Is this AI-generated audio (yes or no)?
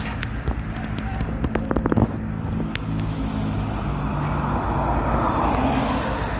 no